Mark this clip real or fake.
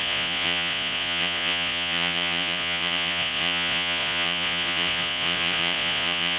fake